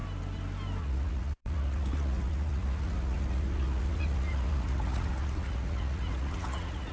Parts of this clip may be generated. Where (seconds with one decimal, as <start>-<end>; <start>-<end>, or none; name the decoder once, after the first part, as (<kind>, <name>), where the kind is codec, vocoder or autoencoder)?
0.8-6.9 (vocoder, Vocos)